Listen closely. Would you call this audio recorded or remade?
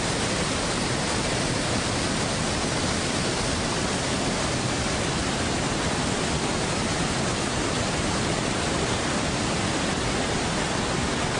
recorded